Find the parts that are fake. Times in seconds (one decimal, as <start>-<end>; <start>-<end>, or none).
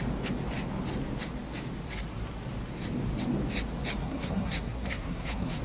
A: 4.0-5.6